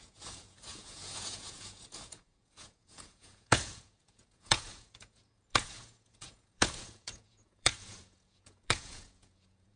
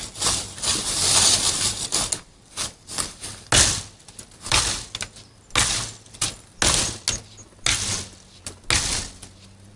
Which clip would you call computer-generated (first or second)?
first